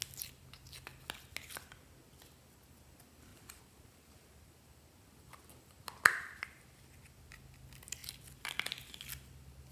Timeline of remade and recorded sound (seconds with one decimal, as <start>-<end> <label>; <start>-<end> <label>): 0.0-3.3 recorded; 3.3-4.5 remade; 4.5-9.7 recorded